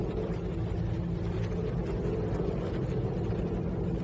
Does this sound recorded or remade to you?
recorded